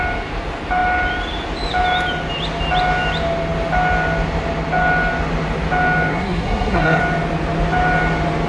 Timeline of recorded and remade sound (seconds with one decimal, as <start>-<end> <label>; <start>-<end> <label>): 0.0-6.1 recorded; 6.1-7.0 remade; 7.0-8.5 recorded